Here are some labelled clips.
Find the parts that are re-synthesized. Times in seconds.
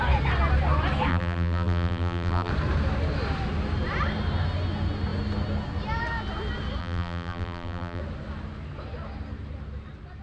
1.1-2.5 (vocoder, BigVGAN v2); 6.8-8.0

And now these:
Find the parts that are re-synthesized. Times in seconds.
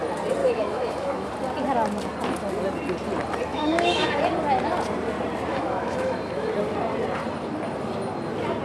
0.4-1.3 (autoencoder, DAC-VAE); 3.5-4.2; 5.5-6.5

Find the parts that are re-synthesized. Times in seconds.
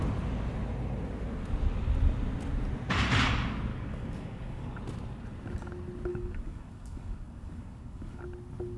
3.7-4.8 (codec, DAC); 6.1-8.2